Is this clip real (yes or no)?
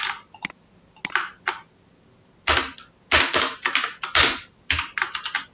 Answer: yes